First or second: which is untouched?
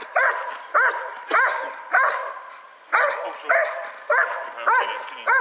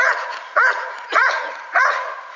first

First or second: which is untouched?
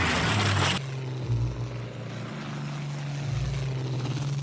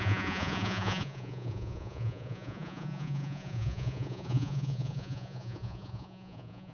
first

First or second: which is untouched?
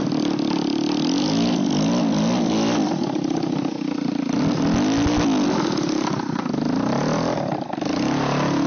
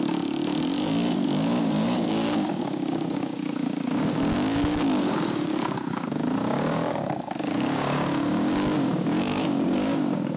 first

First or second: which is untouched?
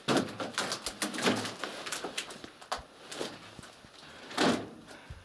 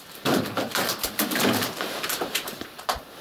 first